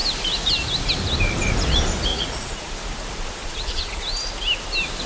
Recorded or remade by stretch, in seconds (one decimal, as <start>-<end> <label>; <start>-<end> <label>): 0.0-2.1 recorded; 2.1-2.7 remade; 2.7-3.4 recorded; 3.4-4.0 remade; 4.0-5.1 recorded